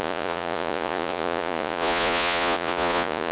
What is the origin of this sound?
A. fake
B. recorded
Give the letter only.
A